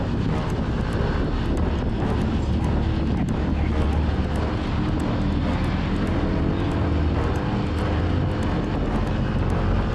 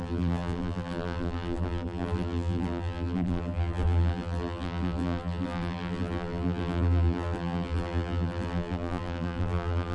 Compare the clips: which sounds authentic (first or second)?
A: first